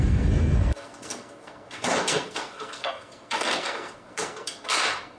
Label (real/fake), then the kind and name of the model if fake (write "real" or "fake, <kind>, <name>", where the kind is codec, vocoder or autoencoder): fake, codec, SNAC